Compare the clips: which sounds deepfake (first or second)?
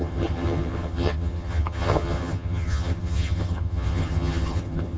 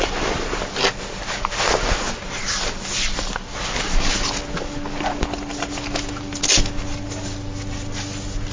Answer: first